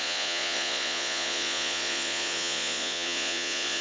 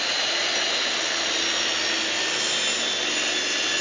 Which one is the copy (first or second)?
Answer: first